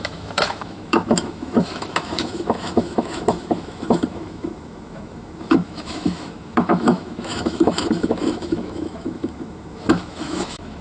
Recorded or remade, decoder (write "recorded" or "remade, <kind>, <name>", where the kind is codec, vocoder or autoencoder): remade, autoencoder, DAC-VAE